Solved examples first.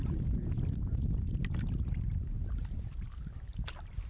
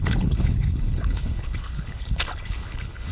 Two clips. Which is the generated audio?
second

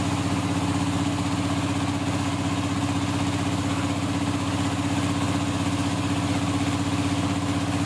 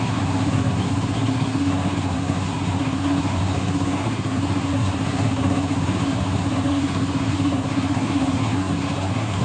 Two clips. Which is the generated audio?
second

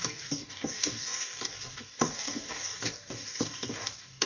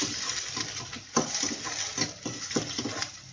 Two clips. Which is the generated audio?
first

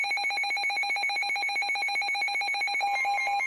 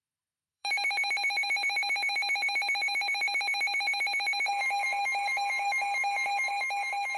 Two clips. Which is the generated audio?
second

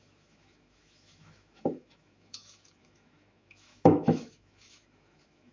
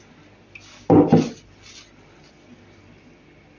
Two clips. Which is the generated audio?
first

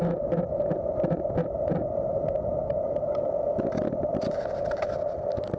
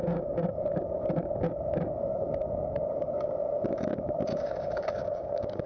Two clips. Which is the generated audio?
second